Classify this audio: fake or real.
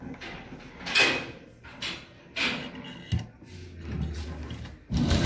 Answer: real